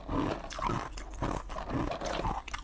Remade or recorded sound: recorded